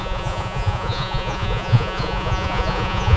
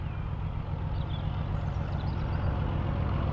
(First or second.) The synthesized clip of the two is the first